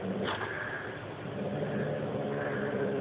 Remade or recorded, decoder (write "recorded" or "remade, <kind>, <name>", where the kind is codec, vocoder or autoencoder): recorded